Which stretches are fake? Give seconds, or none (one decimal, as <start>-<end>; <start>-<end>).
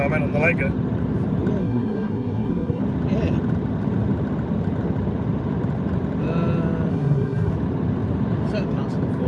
1.6-2.8; 6.9-7.5